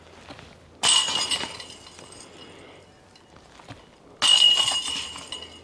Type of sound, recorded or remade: recorded